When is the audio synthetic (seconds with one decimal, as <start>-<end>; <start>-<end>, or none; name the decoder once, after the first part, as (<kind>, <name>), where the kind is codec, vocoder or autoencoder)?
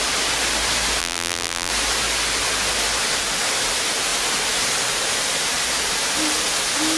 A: 1.0-1.7 (vocoder, BigVGAN v2)